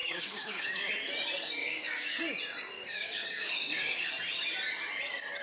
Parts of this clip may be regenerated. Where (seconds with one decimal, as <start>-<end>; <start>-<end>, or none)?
0.0-0.9; 1.6-2.2; 2.8-4.1